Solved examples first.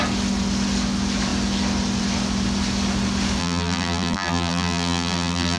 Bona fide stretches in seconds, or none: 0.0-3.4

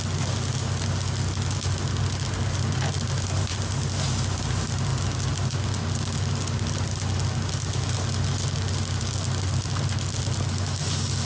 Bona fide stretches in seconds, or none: 0.0-11.2

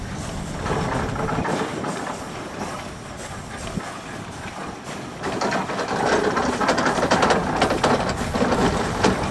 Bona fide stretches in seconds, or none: 0.0-9.3

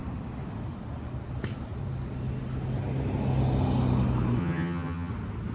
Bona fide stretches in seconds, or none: 0.0-4.4; 5.1-5.5